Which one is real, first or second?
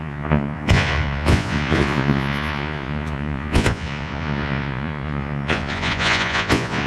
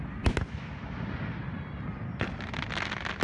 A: second